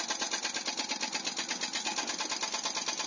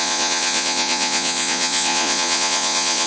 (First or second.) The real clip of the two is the first